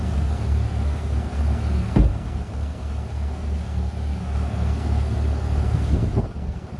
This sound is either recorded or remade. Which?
remade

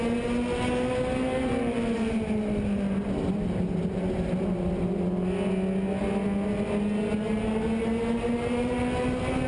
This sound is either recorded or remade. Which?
recorded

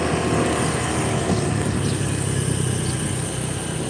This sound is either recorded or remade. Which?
recorded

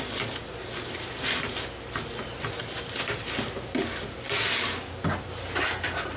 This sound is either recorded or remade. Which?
recorded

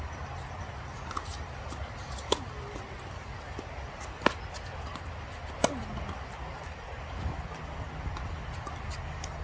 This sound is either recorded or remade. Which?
recorded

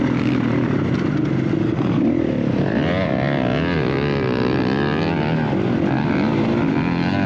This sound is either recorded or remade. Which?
recorded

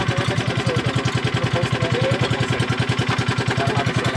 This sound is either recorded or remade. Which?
recorded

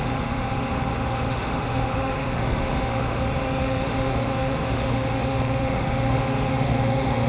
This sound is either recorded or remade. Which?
remade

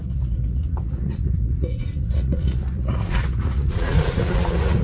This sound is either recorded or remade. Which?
remade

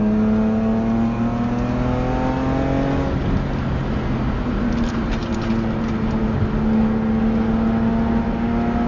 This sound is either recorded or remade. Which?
recorded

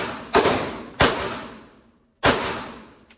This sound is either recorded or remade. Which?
recorded